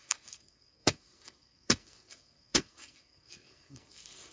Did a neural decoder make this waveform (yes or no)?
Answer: yes